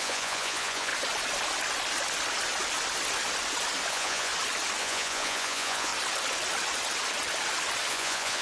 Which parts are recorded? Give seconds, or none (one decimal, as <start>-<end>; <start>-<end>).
0.9-3.9; 4.3-4.8; 5.9-7.9